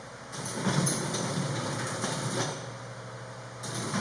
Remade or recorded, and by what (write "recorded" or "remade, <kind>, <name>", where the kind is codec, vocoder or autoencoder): recorded